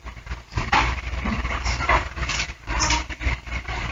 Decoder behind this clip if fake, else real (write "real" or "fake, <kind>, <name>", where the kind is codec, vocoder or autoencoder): fake, vocoder, BigVGAN v2